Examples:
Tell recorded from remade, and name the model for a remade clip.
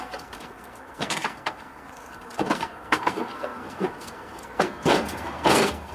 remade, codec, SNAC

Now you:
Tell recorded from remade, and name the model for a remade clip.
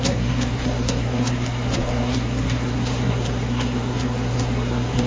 remade, codec, SNAC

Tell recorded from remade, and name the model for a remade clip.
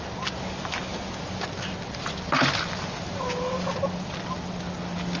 recorded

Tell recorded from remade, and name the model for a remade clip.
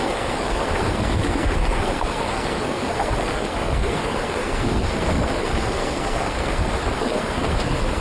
remade, codec, SNAC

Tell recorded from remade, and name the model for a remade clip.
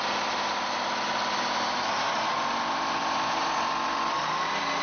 recorded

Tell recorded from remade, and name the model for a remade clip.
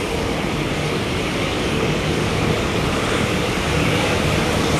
remade, codec, DAC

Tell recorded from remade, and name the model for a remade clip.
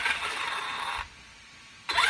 remade, vocoder, BigVGAN v2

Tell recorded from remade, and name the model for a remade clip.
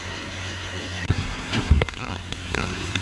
remade, codec, SNAC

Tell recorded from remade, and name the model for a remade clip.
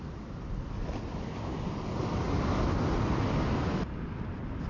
recorded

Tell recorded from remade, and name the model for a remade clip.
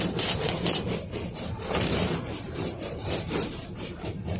remade, vocoder, BigVGAN v2